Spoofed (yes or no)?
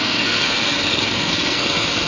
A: yes